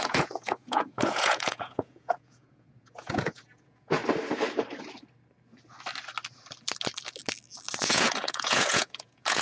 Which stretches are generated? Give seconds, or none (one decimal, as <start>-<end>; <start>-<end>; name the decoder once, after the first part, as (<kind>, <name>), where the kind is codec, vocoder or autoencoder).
0.0-4.0 (vocoder, Vocos); 7.8-9.4